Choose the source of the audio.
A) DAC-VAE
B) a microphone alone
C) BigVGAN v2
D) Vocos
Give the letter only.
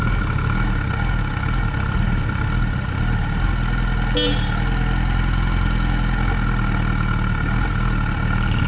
B